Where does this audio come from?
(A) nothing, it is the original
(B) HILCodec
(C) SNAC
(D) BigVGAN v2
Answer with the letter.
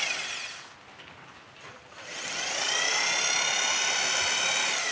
A